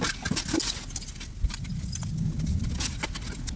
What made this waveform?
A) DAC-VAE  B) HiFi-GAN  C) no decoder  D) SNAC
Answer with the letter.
C